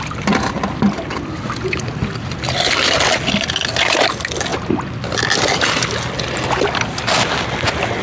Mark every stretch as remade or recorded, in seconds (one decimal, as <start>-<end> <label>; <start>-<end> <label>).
0.0-8.0 recorded